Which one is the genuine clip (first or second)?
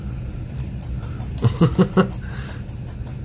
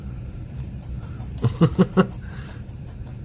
first